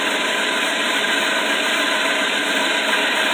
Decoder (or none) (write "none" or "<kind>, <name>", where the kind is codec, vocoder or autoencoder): none